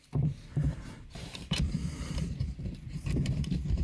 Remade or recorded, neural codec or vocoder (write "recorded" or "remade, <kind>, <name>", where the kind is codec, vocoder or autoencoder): remade, vocoder, BigVGAN v2